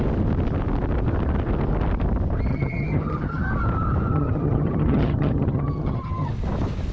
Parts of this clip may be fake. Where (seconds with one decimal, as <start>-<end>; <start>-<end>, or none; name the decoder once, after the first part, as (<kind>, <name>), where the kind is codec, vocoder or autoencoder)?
2.5-3.5 (vocoder, HiFi-GAN); 4.1-6.3